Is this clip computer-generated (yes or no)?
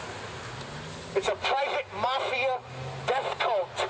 no